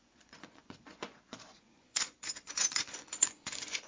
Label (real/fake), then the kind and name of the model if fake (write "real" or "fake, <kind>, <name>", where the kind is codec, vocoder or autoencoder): fake, vocoder, Vocos